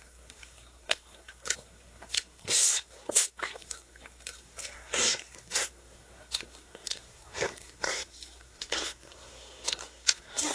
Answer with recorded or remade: remade